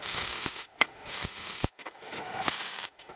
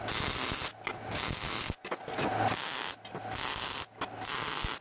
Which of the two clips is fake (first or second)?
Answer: first